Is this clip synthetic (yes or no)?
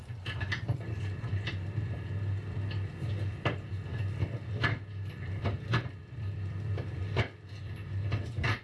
yes